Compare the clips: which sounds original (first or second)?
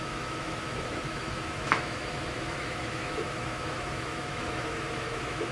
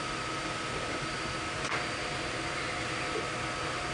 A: second